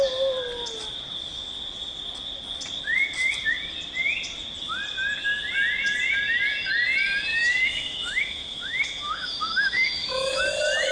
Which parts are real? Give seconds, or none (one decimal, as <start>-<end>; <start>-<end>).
0.0-7.3; 10.4-10.9